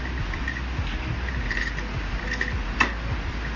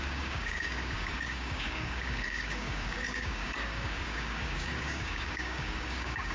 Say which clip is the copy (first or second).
second